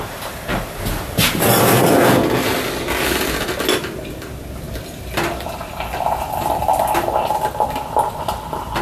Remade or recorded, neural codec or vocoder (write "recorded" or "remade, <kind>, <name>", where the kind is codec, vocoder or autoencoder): recorded